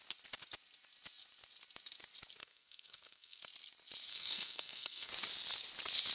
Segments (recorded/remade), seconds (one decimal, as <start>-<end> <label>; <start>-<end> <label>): 0.0-2.4 recorded; 2.4-3.4 remade; 3.4-4.1 recorded; 4.1-5.1 remade; 5.1-6.1 recorded